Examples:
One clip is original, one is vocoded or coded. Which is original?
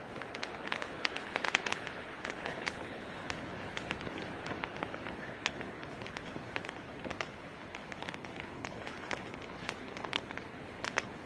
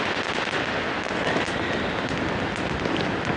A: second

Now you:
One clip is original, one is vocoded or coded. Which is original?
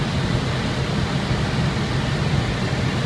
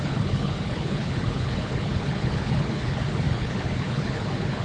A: first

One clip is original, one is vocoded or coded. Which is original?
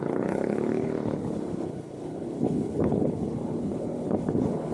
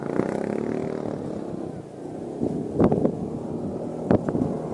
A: second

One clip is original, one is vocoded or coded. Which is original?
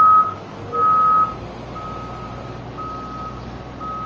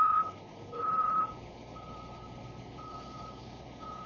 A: first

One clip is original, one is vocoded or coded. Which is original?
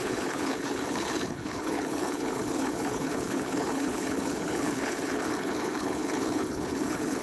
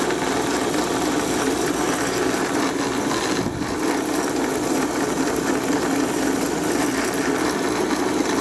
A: second